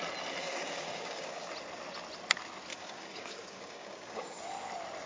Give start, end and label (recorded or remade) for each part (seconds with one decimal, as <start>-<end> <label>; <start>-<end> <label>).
0.0-0.4 recorded; 0.4-1.5 remade; 1.5-2.7 recorded; 2.7-4.4 remade; 4.4-5.1 recorded